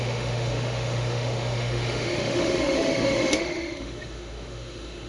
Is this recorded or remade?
remade